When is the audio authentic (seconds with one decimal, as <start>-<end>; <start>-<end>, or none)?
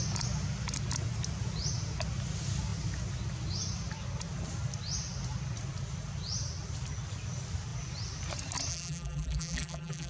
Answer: 0.0-8.7